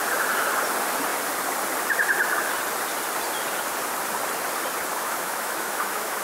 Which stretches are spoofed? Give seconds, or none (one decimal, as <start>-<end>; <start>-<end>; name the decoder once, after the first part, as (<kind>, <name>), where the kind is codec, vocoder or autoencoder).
4.9-6.2 (autoencoder, DAC-VAE)